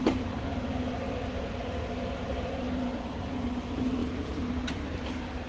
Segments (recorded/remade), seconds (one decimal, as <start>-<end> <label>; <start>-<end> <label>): 0.0-5.5 remade

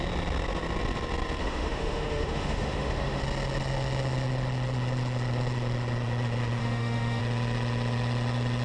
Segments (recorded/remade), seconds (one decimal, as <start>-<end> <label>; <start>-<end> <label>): 0.0-1.4 recorded; 1.4-3.2 remade; 3.2-6.6 recorded; 6.6-7.2 remade; 7.2-8.6 recorded